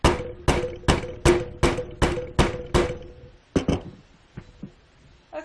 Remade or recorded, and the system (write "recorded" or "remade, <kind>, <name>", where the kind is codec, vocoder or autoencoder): recorded